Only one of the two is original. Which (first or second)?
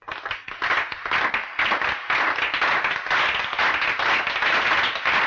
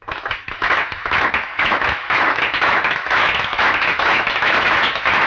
first